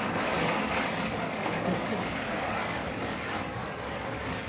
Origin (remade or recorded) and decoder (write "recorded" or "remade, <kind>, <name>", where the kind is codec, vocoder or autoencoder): remade, codec, DAC